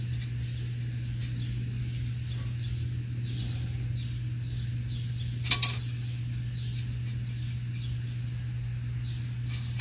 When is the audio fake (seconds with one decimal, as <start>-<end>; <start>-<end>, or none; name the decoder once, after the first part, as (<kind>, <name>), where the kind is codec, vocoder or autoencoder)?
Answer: none

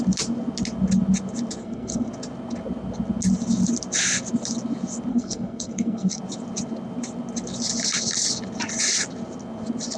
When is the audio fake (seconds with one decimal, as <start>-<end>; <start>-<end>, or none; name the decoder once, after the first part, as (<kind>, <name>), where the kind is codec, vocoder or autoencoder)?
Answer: 1.6-2.1 (codec, SNAC); 5.1-6.2

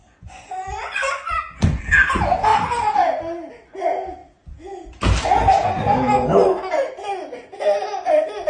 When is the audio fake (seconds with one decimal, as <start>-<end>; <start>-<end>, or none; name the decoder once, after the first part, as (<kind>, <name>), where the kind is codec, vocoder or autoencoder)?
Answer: 0.0-1.8 (vocoder, Vocos)

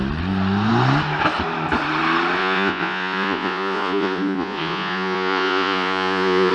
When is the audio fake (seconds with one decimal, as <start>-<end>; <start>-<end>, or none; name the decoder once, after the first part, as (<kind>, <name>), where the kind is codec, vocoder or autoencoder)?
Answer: 2.4-6.5 (vocoder, Vocos)

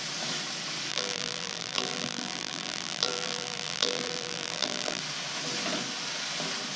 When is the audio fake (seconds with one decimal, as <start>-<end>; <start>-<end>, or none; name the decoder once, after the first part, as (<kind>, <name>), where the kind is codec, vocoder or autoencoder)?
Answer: 0.9-5.0 (vocoder, BigVGAN v2)

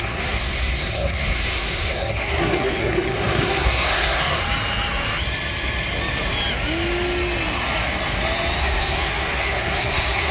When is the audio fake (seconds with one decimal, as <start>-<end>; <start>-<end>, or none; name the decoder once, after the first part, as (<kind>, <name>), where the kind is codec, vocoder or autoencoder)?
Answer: 0.0-4.4 (codec, SNAC); 8.6-10.3